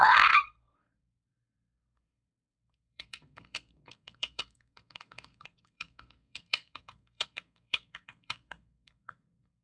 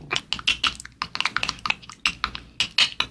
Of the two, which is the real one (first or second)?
second